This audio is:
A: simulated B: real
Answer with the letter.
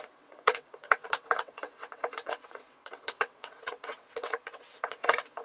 A